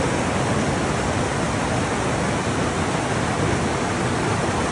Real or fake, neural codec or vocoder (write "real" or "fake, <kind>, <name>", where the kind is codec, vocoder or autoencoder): real